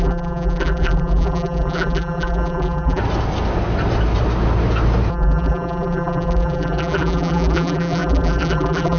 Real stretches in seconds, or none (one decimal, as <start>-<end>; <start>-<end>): 3.0-5.1